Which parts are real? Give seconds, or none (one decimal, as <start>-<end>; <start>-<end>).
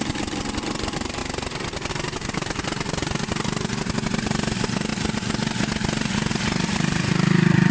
1.2-1.9; 3.0-4.1; 4.9-6.3